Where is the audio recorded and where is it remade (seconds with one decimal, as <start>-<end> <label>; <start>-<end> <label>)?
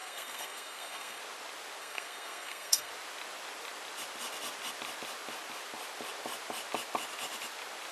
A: 0.0-1.2 remade; 1.2-1.8 recorded; 1.8-2.9 remade; 2.9-7.9 recorded